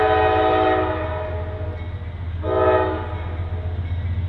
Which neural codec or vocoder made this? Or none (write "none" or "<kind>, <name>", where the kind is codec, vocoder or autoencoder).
none